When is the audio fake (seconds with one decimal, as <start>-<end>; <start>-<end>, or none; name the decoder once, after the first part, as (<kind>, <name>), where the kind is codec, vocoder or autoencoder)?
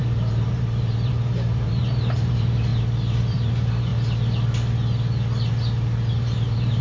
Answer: 0.0-3.9 (vocoder, BigVGAN v2); 6.1-6.8